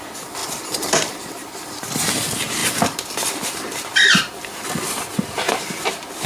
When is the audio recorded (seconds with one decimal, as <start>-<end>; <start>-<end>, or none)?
0.0-0.4; 1.3-2.6; 4.7-6.3